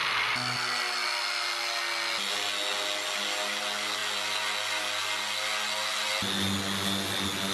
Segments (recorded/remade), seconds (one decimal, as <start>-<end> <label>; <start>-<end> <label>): 0.0-7.5 recorded